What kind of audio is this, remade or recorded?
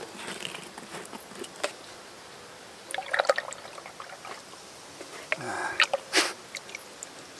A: recorded